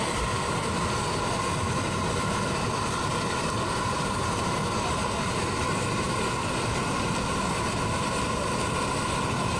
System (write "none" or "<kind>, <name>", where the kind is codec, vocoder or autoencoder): none